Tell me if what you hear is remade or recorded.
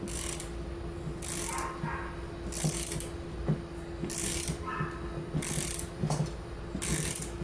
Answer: recorded